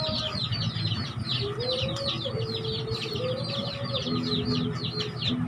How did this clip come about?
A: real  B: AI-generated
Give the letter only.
A